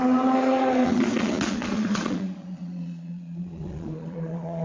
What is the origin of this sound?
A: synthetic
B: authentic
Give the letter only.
A